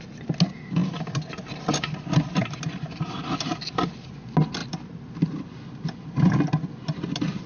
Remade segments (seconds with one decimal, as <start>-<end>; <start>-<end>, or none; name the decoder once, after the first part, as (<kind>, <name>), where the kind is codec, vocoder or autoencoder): none